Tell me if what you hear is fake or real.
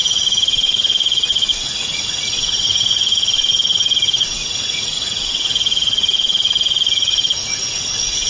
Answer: fake